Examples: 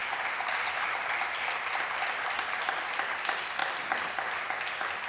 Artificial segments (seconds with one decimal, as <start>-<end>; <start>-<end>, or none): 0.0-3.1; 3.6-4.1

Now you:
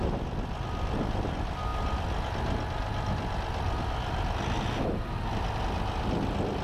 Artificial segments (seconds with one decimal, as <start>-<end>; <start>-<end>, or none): none

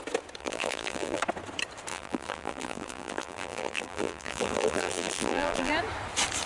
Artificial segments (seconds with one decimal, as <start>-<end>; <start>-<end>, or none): 0.4-1.2; 1.9-5.7

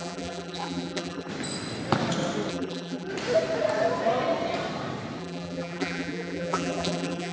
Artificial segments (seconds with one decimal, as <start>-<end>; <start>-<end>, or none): 0.0-1.3; 2.5-3.1; 5.2-7.3

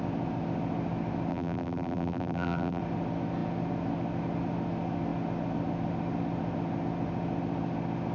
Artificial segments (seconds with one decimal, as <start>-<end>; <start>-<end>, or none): 1.3-2.8

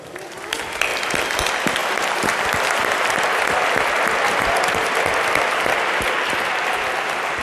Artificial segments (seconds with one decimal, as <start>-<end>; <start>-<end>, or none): 0.9-1.4; 1.8-3.5

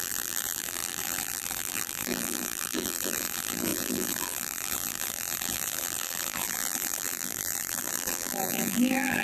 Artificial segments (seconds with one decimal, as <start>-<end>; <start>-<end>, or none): 0.0-9.2

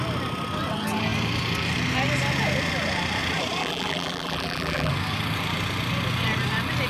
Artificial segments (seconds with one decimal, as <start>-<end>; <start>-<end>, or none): 3.6-4.9